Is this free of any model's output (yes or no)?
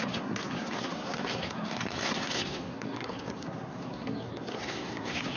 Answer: no